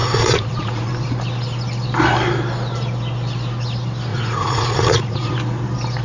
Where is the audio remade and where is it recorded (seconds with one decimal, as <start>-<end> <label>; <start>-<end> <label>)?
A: 0.0-0.9 remade; 0.9-4.1 recorded; 4.1-5.3 remade; 5.3-6.0 recorded